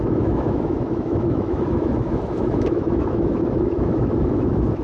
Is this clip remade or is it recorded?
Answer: remade